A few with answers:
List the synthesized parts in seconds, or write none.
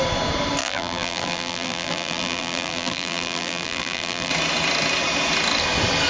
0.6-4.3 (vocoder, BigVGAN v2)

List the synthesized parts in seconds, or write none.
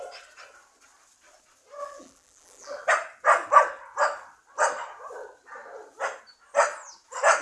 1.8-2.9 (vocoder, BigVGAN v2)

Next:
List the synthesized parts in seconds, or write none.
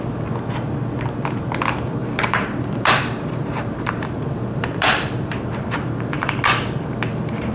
2.0-6.3 (vocoder, BigVGAN v2)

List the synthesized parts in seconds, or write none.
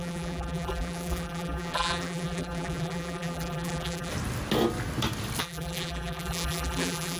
0.0-4.1 (vocoder, BigVGAN v2); 5.4-7.2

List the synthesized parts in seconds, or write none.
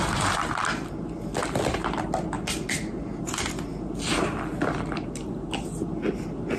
none